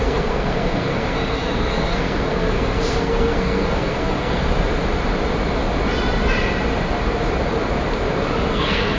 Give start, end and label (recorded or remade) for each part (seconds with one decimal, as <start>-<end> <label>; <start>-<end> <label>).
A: 0.0-4.4 remade; 4.4-8.5 recorded; 8.5-9.0 remade